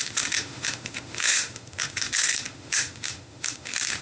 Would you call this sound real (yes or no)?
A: no